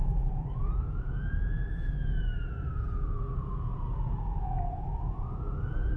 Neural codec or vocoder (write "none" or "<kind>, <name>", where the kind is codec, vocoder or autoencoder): vocoder, Vocos